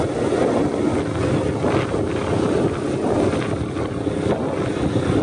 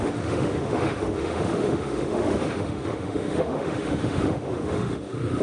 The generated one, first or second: second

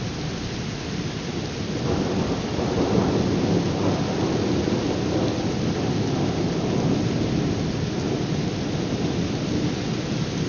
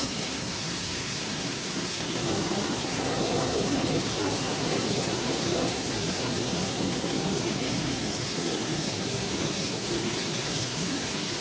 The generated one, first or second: second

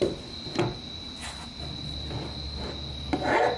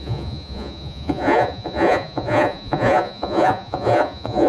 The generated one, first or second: second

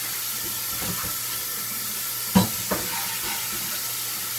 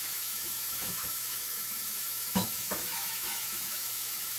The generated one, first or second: second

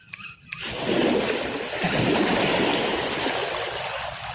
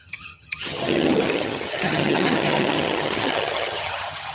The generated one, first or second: second